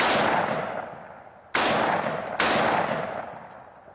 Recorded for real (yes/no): yes